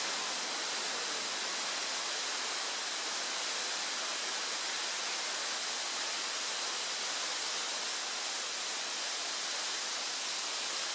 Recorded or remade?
recorded